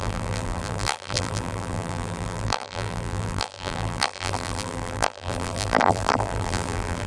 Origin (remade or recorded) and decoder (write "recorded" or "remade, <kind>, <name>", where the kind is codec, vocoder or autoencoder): remade, vocoder, BigVGAN v2